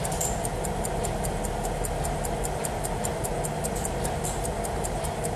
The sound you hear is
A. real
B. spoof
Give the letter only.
A